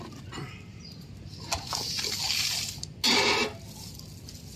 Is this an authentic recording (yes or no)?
yes